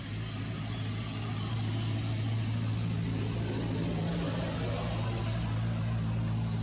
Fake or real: real